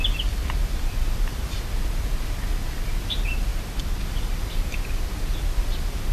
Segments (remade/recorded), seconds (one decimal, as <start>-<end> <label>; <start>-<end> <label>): 0.0-6.1 recorded